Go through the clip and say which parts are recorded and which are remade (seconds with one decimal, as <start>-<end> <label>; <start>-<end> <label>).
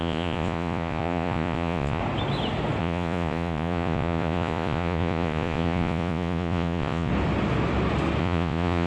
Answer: 0.0-2.0 remade; 2.0-2.8 recorded; 2.8-7.1 remade; 7.1-8.2 recorded; 8.2-8.9 remade